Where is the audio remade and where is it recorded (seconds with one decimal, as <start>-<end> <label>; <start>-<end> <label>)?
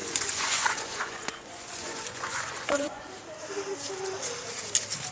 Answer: 0.0-3.1 remade; 3.1-5.1 recorded